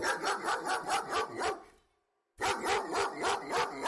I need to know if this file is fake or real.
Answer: real